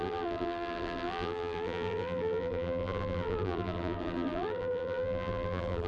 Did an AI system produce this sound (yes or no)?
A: yes